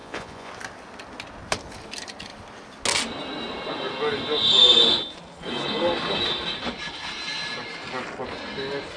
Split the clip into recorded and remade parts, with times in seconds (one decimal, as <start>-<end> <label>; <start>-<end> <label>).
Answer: 0.0-0.5 remade; 0.5-9.0 recorded